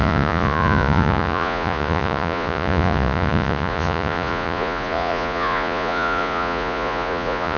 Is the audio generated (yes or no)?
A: yes